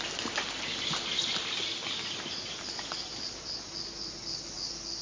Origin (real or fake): real